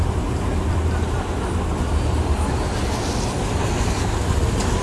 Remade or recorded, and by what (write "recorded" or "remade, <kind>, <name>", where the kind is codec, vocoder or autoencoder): recorded